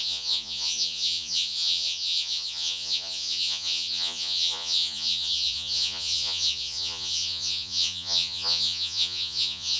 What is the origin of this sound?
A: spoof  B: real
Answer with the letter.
A